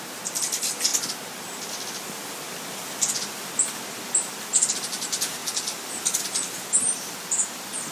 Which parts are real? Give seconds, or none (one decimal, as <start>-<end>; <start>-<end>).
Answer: none